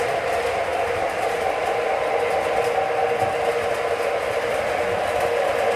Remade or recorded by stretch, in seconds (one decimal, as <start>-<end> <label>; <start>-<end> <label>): 0.0-5.8 recorded